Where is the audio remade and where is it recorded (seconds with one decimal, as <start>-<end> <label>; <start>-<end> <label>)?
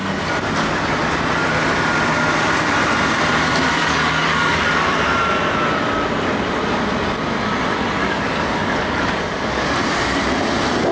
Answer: 0.0-3.8 recorded; 3.8-4.9 remade; 4.9-8.0 recorded; 8.0-9.7 remade; 9.7-10.9 recorded